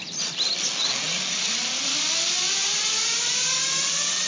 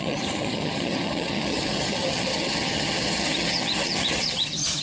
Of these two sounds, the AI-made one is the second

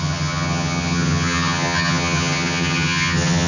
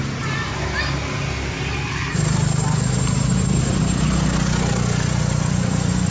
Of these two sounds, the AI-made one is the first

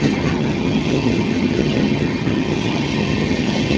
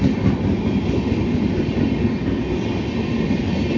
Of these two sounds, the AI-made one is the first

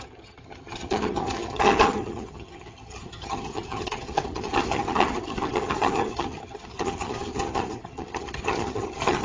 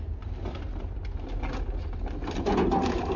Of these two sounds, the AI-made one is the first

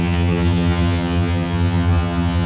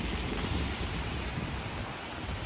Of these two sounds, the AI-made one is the first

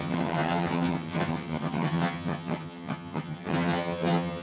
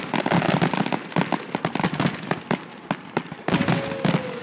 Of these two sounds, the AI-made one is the first